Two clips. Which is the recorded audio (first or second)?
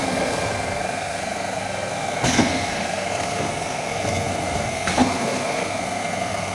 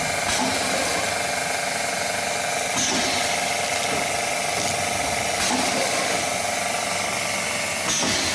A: second